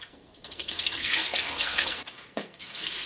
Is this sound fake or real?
fake